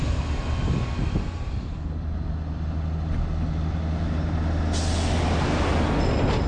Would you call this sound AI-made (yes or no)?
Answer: no